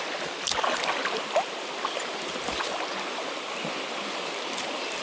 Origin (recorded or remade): recorded